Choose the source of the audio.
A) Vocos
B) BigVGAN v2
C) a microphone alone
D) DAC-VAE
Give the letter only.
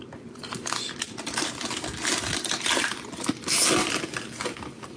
B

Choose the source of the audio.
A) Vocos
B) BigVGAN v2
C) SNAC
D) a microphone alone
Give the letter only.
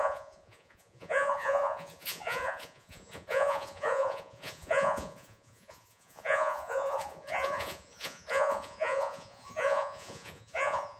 A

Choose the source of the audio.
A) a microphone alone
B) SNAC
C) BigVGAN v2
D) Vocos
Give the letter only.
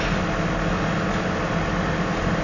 A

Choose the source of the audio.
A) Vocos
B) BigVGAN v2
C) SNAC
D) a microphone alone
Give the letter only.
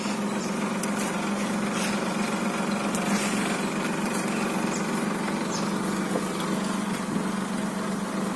D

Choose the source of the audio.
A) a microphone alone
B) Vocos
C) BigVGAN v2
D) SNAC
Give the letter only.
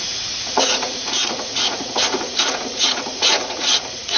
B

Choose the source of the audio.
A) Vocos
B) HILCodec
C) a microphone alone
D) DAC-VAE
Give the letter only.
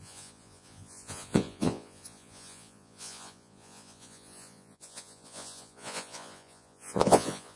A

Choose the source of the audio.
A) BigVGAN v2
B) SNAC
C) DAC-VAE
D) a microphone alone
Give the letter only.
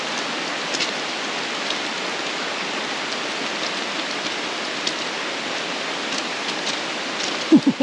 D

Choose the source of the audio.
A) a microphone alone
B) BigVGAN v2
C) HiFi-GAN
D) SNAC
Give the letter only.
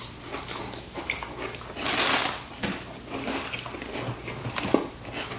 A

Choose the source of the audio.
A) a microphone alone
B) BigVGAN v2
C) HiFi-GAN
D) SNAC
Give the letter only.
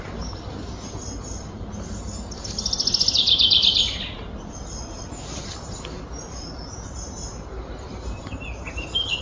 A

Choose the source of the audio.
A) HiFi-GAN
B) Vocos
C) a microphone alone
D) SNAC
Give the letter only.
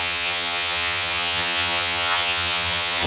A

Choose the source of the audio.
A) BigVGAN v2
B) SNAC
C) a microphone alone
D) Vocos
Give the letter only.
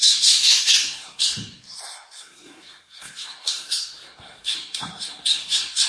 B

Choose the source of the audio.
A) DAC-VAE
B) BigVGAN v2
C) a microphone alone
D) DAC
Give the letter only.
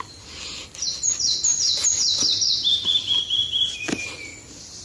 B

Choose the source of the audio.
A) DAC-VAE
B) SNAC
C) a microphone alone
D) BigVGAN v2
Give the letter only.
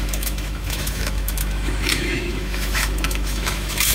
A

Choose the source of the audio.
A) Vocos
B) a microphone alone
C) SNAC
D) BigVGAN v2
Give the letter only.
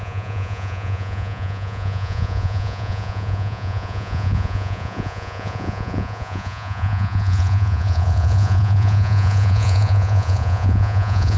A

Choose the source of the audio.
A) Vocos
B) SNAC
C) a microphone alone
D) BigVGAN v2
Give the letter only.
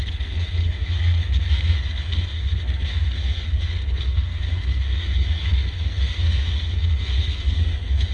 B